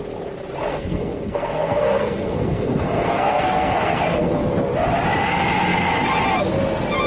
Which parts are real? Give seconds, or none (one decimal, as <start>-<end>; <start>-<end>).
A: 0.0-0.7; 4.4-7.1